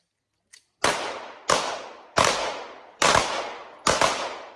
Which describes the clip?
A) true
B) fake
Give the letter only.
A